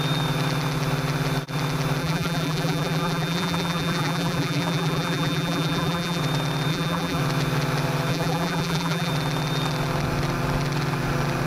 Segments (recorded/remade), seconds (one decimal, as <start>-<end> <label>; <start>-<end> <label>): 0.0-2.0 recorded; 2.0-6.2 remade; 6.2-6.7 recorded; 6.7-7.2 remade; 7.2-8.1 recorded; 8.1-9.1 remade; 9.1-11.5 recorded